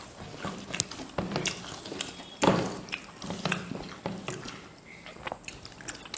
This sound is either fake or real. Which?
real